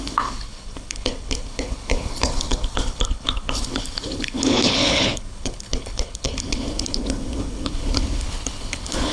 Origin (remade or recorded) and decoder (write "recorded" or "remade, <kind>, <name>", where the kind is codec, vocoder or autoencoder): remade, codec, HILCodec